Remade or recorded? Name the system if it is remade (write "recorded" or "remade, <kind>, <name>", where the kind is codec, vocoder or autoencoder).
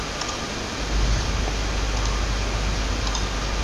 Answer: recorded